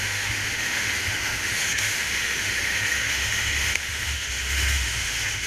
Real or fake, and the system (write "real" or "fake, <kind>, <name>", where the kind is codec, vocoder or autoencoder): fake, autoencoder, DAC-VAE